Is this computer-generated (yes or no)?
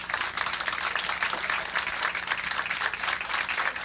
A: no